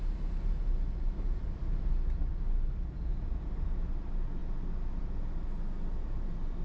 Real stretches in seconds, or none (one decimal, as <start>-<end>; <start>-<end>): 0.0-6.6